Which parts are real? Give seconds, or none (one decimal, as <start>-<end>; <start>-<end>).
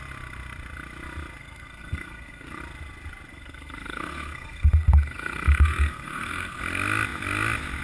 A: 0.0-1.4; 2.6-3.3; 6.6-7.8